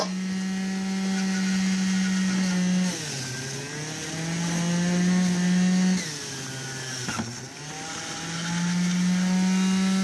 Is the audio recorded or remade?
recorded